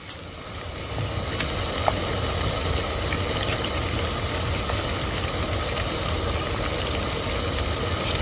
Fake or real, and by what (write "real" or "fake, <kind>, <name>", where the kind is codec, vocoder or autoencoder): real